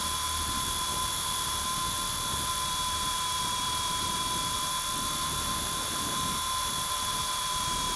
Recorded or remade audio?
remade